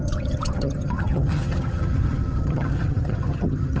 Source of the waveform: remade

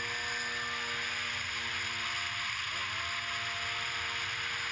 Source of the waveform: recorded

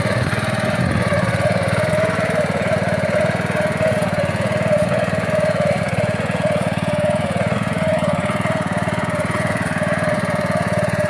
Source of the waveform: remade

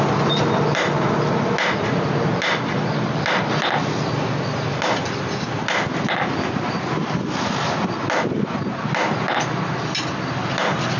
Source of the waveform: recorded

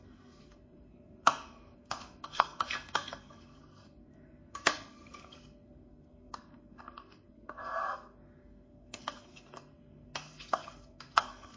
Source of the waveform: remade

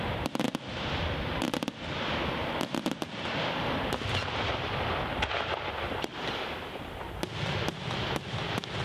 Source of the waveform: recorded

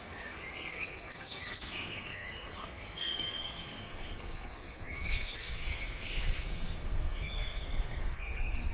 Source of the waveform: remade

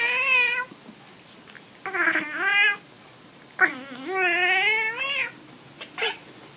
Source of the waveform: recorded